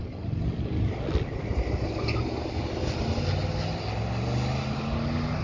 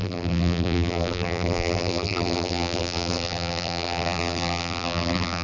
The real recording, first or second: first